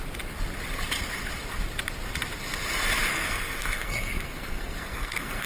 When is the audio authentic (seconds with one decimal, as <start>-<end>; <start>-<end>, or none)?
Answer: 0.0-3.1